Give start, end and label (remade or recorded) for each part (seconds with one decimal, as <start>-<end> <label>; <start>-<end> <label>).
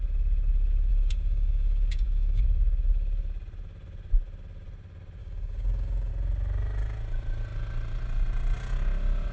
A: 0.0-0.9 recorded; 0.9-2.4 remade; 2.4-5.2 recorded; 5.2-6.1 remade; 6.1-9.3 recorded